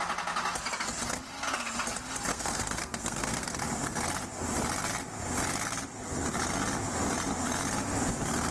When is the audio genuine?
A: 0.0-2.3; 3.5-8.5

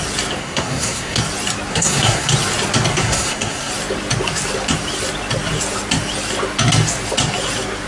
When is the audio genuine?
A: 0.0-0.4; 1.2-1.7; 2.3-2.9; 3.7-7.9

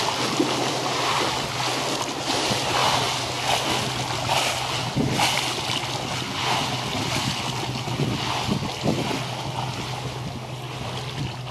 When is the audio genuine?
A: 0.0-11.5

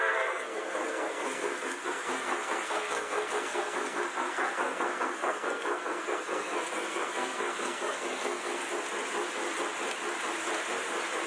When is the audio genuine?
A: 8.6-11.3

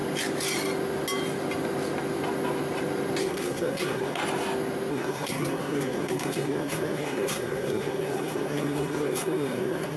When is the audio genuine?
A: 0.0-3.2; 4.2-4.9

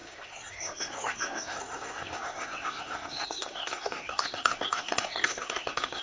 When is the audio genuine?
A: none

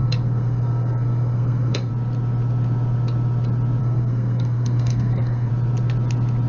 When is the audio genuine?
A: 1.9-3.8; 5.5-6.5

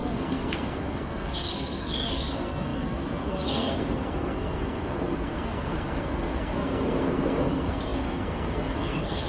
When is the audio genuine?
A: none